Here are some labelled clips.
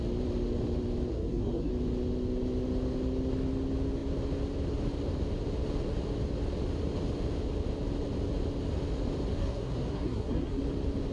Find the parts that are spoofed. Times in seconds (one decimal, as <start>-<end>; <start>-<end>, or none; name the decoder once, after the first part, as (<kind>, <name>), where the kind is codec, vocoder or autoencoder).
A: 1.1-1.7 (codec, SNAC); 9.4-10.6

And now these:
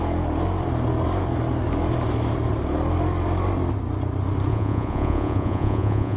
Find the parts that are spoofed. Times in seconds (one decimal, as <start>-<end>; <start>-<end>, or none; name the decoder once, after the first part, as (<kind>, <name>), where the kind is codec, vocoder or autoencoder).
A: 4.5-6.2 (vocoder, Vocos)

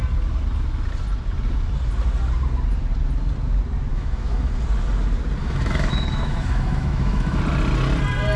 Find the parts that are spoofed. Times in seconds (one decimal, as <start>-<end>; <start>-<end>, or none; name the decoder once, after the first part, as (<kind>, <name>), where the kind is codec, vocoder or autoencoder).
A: 3.9-4.5 (autoencoder, DAC-VAE); 5.4-7.4

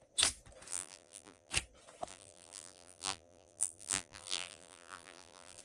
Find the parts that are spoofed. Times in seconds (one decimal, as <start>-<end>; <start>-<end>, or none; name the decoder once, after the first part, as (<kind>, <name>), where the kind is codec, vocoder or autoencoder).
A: 0.7-1.5 (vocoder, BigVGAN v2); 2.1-5.6

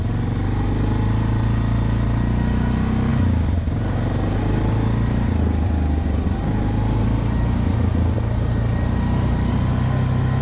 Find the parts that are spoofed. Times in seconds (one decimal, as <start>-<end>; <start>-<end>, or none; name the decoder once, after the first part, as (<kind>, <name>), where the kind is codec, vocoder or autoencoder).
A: none

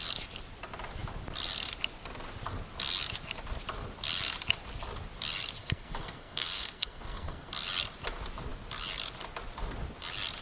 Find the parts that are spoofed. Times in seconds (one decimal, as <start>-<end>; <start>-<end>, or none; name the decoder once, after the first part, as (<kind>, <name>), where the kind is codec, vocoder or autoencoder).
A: 5.6-7.5 (codec, SNAC)

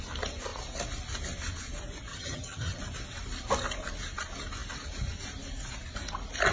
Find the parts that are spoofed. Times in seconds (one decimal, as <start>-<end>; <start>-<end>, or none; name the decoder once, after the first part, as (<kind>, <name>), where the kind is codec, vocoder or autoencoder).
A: 2.1-2.8 (vocoder, HiFi-GAN)

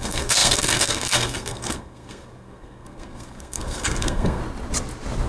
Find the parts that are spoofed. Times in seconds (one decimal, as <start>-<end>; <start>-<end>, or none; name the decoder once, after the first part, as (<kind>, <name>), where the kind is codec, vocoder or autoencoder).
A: 0.0-4.4 (codec, SNAC)